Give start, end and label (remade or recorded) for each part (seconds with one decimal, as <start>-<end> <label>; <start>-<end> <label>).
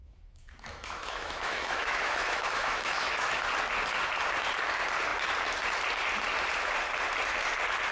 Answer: 0.0-3.4 remade; 3.4-7.9 recorded